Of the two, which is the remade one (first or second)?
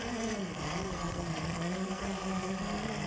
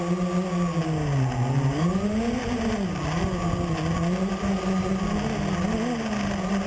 first